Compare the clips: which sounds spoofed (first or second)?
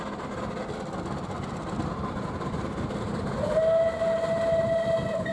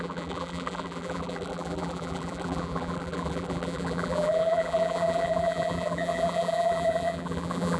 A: second